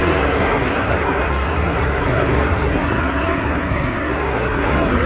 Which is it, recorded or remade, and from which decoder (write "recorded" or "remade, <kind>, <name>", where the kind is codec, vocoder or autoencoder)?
remade, codec, SNAC